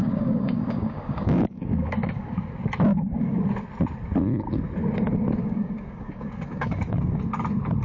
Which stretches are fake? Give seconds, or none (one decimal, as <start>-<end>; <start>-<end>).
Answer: 0.0-2.5; 2.9-3.4; 5.4-7.2